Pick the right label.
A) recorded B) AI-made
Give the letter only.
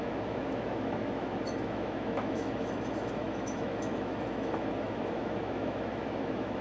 B